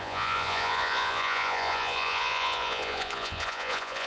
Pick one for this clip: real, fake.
fake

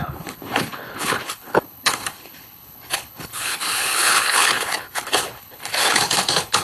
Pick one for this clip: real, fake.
fake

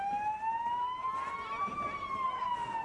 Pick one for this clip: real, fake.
real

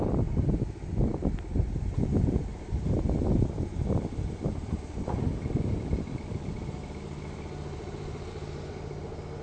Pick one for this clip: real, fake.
real